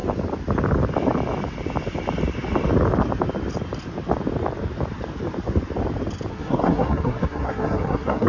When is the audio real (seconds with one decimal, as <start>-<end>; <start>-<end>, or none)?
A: 0.0-6.3